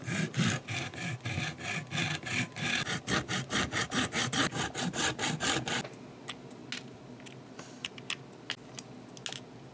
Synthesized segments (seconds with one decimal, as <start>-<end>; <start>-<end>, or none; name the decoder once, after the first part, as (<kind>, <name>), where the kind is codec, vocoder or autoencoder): none